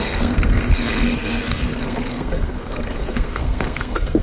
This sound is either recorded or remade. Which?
remade